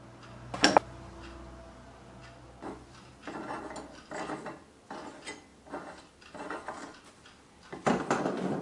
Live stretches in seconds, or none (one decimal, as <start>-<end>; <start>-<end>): 0.0-8.6